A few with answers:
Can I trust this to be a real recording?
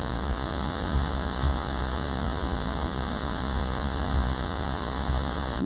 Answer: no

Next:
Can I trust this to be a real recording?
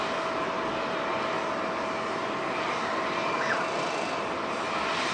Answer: yes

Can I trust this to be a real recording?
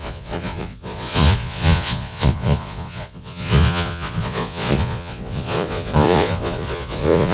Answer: no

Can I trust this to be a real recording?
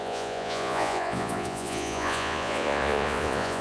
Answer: no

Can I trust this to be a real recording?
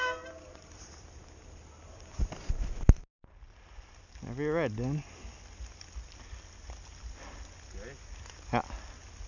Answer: yes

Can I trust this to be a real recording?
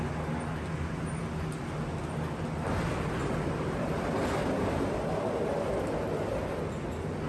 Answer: yes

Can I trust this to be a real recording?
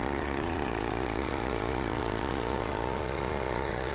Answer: no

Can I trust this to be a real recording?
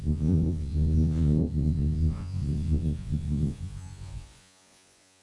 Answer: no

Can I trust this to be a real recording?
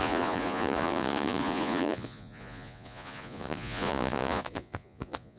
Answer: no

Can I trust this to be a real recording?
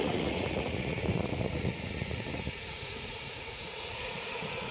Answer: no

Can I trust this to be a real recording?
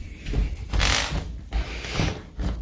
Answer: yes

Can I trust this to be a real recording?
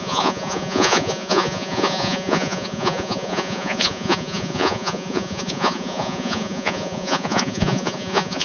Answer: no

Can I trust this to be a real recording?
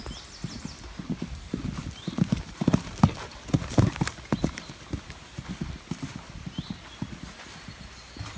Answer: yes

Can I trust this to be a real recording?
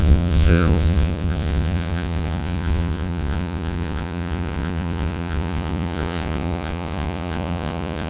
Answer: no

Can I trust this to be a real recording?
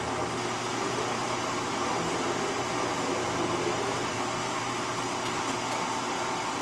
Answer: yes